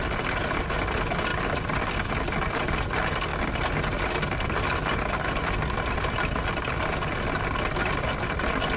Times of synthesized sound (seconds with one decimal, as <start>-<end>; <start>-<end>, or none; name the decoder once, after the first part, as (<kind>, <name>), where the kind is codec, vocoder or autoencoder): none